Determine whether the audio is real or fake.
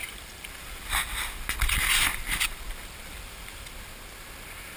real